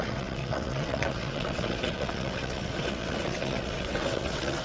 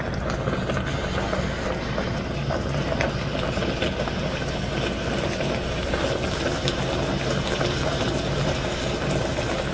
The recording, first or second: second